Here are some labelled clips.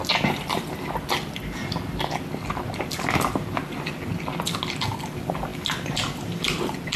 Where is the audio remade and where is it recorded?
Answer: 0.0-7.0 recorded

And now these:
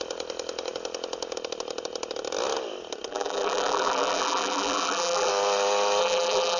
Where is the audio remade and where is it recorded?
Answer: 0.0-3.1 recorded; 3.1-5.3 remade; 5.3-6.0 recorded; 6.0-6.6 remade

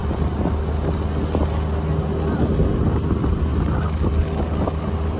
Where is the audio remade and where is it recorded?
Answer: 0.0-5.2 recorded

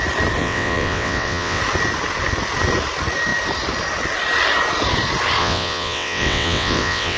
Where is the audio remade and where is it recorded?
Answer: 0.0-0.4 recorded; 0.4-1.6 remade; 1.6-5.4 recorded; 5.4-7.2 remade